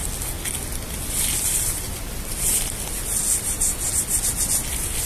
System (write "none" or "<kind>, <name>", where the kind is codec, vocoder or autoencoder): none